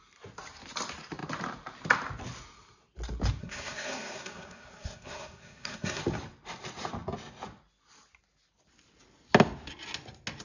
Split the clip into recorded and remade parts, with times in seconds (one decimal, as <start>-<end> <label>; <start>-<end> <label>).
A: 0.0-3.4 recorded; 3.4-6.0 remade; 6.0-10.4 recorded